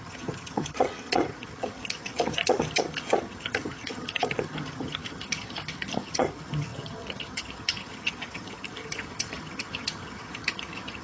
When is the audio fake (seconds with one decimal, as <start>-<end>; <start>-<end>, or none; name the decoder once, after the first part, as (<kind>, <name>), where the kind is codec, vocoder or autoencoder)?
0.0-11.0 (vocoder, HiFi-GAN)